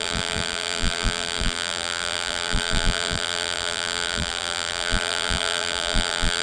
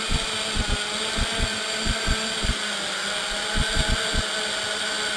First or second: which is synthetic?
first